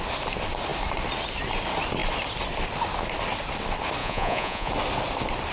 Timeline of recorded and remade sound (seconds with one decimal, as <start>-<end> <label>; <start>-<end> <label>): 0.0-4.0 recorded; 4.0-4.7 remade; 4.7-5.5 recorded